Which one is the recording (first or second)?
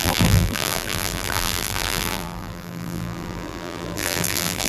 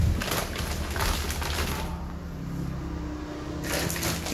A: second